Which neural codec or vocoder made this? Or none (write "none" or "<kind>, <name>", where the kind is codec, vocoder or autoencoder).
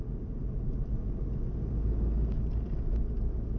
none